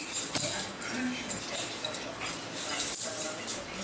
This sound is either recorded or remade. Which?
recorded